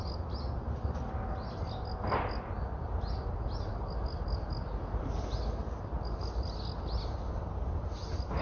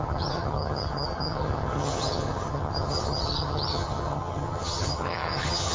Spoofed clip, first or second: second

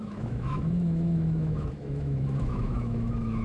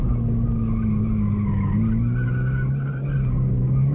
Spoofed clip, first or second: first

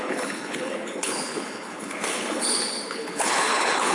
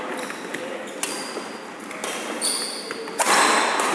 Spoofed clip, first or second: first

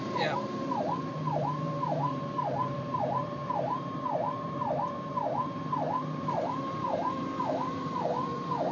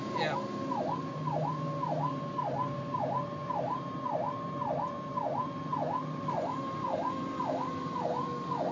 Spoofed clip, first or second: first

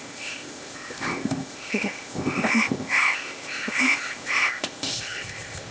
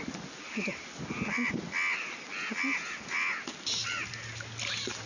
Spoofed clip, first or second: first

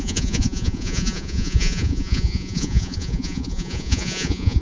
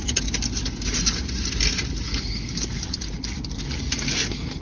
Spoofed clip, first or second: first